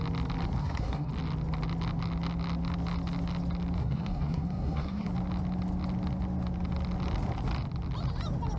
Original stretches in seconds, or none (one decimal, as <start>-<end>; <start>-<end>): 0.0-0.6; 1.1-3.8; 5.1-8.6